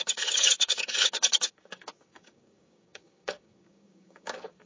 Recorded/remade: remade